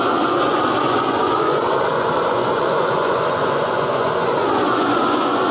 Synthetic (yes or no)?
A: yes